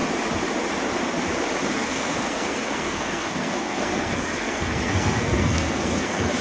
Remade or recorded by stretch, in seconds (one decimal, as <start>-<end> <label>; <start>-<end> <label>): 0.0-1.7 recorded; 1.7-6.4 remade